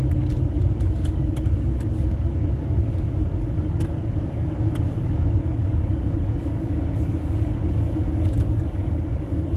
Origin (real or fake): fake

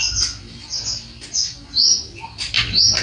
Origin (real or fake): real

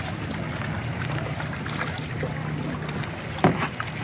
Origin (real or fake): real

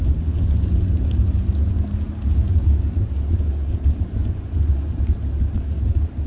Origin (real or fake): real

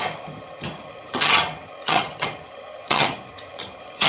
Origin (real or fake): fake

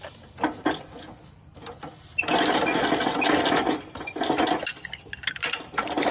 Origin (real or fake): real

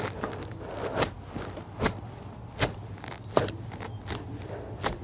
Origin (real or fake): real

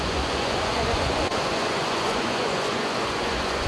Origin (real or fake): fake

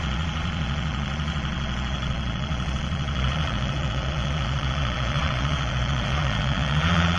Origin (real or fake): fake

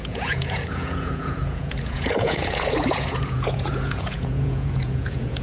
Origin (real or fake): fake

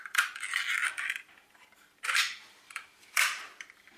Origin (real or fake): fake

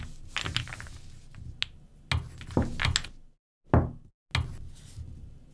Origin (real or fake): real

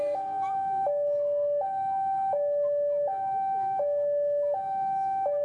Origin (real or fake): fake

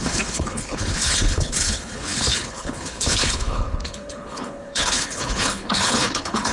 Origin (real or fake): fake